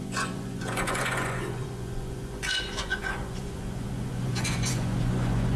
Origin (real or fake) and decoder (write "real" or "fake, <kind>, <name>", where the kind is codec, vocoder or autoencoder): fake, vocoder, Vocos